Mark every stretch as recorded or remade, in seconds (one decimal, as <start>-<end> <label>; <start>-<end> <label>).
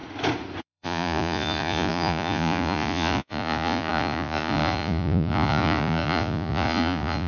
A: 0.0-0.6 recorded; 0.6-7.3 remade